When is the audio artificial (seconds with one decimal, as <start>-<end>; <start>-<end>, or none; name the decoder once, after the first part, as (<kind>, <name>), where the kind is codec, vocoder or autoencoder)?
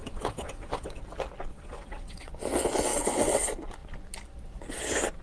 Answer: 0.0-1.0 (vocoder, WaveNeXt); 1.5-2.3; 2.9-3.4